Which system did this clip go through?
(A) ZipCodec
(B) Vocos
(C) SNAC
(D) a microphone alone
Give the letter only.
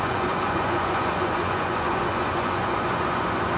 B